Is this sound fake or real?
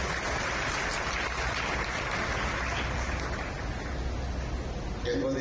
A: real